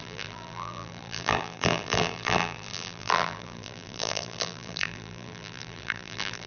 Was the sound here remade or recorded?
remade